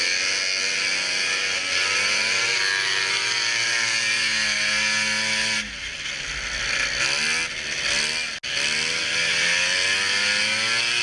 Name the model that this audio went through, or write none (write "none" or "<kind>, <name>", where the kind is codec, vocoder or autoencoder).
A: none